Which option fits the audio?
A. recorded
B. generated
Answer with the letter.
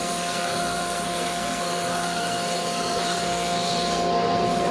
B